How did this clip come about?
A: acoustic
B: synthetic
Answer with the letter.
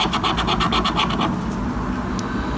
A